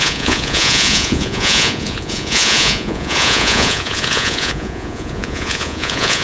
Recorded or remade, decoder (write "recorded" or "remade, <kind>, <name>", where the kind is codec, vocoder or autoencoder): remade, vocoder, Vocos